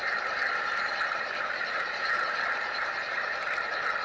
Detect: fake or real real